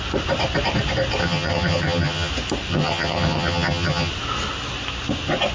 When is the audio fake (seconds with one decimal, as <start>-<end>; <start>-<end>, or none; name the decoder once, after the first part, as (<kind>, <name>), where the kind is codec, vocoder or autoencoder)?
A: 1.2-2.3 (vocoder, HiFi-GAN); 2.7-4.1